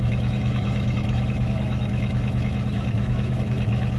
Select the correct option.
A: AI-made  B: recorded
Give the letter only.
A